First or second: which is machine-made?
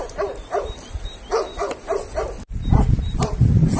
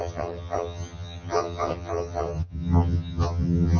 second